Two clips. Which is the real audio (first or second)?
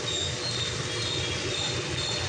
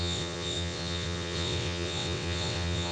first